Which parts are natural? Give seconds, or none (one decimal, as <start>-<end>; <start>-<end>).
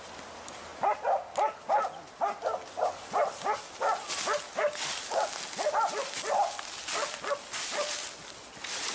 0.0-8.9